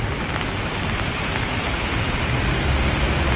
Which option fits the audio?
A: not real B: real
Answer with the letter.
B